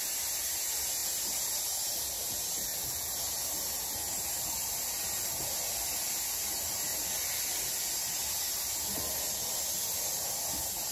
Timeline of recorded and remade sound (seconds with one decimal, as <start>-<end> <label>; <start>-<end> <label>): 0.0-10.9 recorded